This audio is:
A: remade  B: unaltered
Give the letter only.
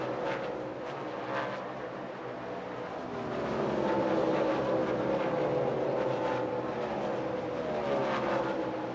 B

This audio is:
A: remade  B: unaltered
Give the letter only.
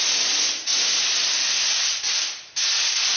B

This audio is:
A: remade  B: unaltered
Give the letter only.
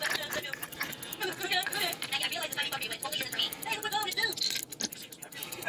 B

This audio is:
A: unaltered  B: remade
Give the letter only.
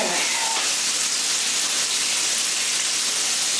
A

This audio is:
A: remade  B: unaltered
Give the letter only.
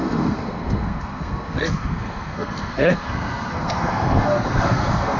A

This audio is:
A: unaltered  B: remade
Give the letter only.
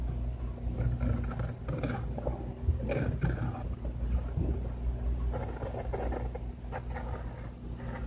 A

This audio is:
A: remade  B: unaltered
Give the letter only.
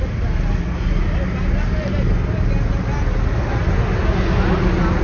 B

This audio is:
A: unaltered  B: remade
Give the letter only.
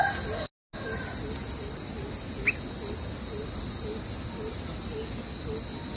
A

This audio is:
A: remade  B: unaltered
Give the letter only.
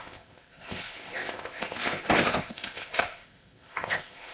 A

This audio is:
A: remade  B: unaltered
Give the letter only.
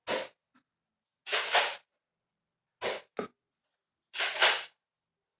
B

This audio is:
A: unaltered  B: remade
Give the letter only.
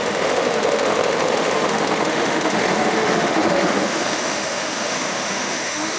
B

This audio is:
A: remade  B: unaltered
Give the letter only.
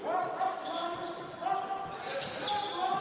B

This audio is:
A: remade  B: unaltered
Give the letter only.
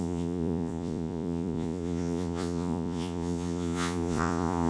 A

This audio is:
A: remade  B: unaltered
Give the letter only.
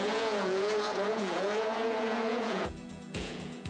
A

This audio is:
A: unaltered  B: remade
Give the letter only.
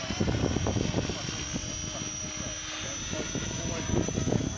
A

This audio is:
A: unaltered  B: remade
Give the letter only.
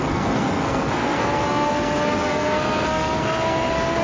B